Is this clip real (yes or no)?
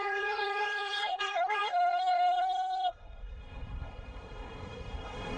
no